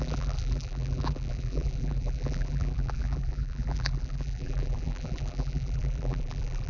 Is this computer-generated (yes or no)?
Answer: yes